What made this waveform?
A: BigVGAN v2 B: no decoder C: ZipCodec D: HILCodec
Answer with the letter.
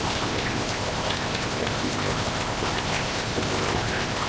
C